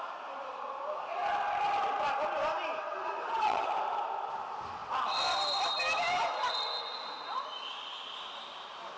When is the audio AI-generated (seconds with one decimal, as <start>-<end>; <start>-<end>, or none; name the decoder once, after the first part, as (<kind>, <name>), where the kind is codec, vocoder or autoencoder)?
2.8-3.7 (vocoder, WaveNeXt)